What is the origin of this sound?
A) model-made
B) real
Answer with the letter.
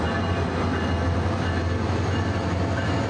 B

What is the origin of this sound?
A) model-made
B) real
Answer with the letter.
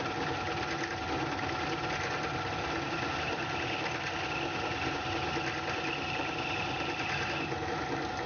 B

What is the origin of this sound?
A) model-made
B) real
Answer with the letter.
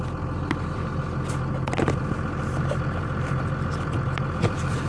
B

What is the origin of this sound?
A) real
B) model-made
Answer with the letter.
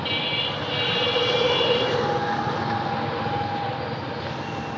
A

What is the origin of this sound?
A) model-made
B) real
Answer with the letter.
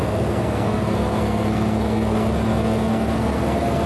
A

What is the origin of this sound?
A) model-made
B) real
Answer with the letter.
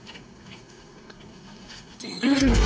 A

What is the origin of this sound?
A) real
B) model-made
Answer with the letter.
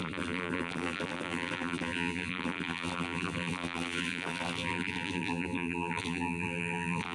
B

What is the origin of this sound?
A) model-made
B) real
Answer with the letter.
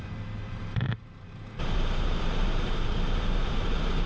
A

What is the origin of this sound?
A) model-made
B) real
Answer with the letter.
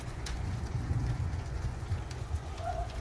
A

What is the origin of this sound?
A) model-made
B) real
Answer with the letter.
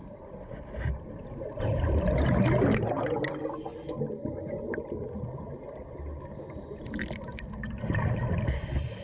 B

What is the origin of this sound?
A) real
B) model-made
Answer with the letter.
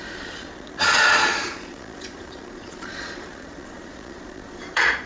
B